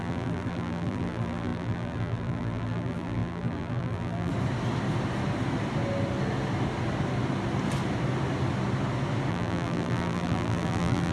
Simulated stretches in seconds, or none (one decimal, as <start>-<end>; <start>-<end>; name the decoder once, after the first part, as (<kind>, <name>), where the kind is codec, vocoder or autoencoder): 0.0-4.3 (vocoder, BigVGAN v2); 9.3-11.1